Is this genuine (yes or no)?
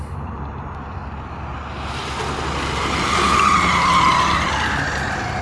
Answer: yes